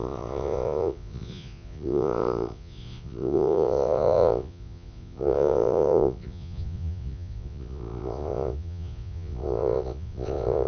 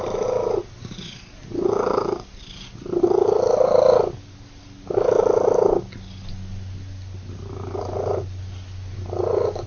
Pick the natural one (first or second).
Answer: second